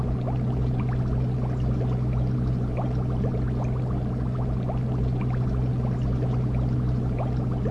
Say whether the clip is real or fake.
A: real